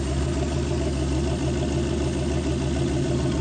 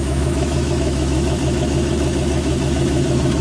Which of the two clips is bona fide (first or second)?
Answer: first